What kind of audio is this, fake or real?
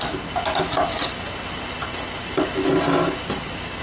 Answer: real